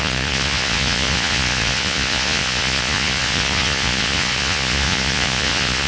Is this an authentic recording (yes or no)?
no